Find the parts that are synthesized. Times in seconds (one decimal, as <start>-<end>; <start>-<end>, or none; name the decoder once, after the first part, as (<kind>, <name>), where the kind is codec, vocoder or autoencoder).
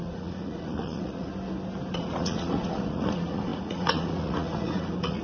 0.0-1.3 (vocoder, Vocos); 1.9-5.2